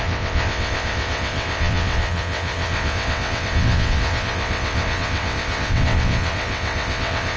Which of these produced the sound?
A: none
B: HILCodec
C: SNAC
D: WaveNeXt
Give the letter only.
D